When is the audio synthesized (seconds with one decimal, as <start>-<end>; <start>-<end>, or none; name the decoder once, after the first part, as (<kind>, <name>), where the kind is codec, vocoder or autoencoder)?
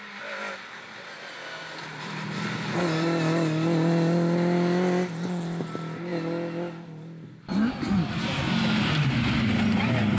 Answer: none